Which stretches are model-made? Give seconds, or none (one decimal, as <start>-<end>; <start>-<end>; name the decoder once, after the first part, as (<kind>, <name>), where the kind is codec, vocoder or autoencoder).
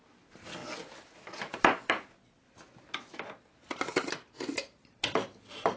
none